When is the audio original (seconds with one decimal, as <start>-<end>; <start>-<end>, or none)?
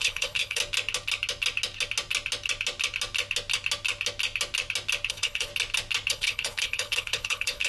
0.6-5.1; 5.5-6.1